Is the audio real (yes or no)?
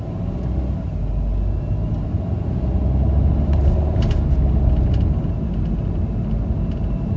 yes